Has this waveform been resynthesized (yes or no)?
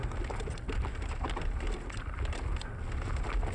no